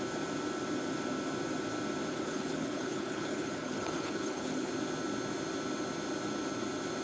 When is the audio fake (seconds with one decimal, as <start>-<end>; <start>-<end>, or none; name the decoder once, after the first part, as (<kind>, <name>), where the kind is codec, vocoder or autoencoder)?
2.1-4.7 (codec, HILCodec)